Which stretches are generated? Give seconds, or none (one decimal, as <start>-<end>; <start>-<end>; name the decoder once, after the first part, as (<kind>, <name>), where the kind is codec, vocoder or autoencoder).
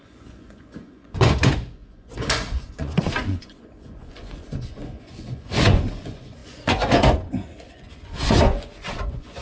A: 0.0-9.4 (vocoder, Vocos)